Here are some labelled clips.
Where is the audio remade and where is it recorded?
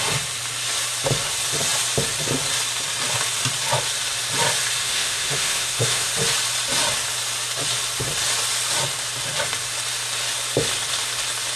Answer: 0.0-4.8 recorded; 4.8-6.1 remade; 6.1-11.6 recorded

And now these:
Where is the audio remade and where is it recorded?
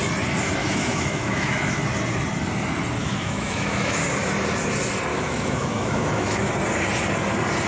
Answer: 0.0-0.6 recorded; 0.6-1.8 remade; 1.8-3.0 recorded; 3.0-4.0 remade; 4.0-5.1 recorded; 5.1-6.5 remade; 6.5-7.7 recorded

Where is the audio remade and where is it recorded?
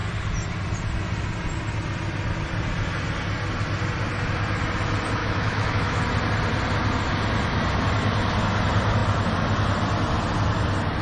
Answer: 0.0-5.2 recorded; 5.2-6.0 remade; 6.0-11.0 recorded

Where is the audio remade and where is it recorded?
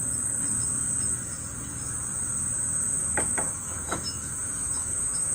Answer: 0.0-3.0 recorded; 3.0-5.3 remade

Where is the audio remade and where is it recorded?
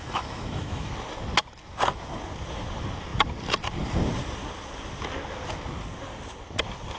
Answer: 0.0-0.9 remade; 0.9-7.0 recorded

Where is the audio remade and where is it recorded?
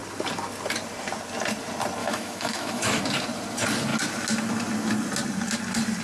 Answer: 0.0-2.0 recorded; 2.0-3.0 remade; 3.0-6.0 recorded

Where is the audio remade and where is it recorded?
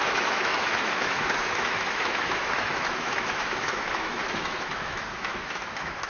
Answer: 0.0-6.1 remade